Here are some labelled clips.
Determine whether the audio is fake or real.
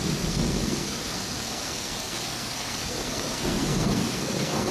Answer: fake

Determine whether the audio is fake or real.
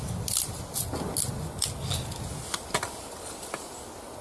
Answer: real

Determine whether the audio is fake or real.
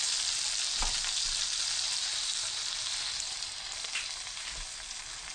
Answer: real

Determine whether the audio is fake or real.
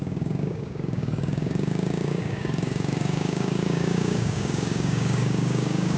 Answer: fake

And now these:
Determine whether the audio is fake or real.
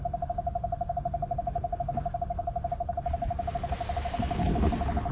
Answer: fake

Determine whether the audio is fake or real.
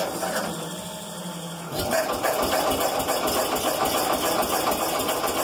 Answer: real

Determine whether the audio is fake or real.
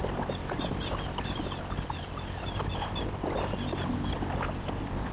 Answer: real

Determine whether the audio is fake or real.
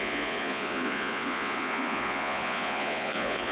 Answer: fake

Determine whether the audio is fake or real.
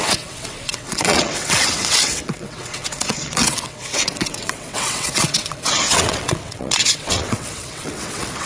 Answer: fake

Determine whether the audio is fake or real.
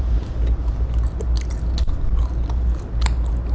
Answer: real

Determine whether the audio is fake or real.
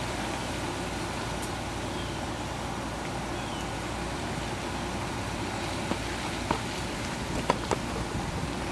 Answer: real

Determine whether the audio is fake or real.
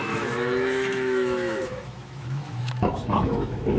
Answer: fake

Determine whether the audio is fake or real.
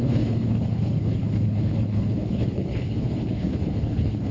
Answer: fake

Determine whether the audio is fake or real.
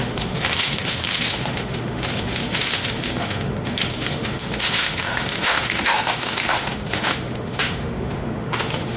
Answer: fake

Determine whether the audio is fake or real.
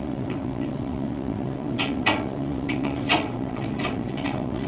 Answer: fake